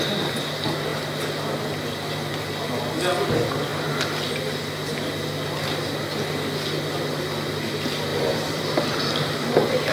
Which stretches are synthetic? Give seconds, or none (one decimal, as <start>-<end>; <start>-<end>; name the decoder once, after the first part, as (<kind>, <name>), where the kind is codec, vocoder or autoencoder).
8.1-8.8 (vocoder, BigVGAN v2)